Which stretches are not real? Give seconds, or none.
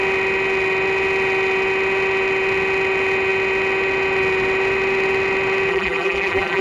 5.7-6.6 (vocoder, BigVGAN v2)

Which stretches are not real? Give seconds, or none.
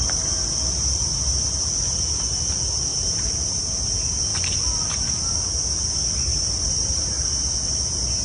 2.9-3.6 (vocoder, BigVGAN v2); 6.3-7.0